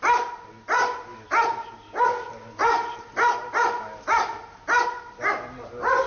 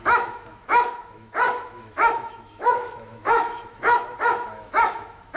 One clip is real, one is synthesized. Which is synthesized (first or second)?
second